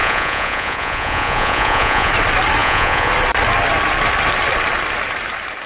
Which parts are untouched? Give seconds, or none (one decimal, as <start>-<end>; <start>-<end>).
2.1-2.6; 3.1-5.7